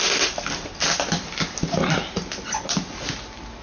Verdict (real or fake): real